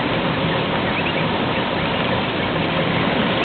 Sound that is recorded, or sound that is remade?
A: recorded